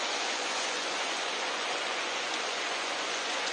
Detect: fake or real fake